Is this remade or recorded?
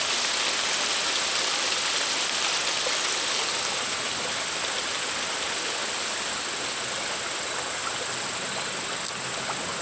recorded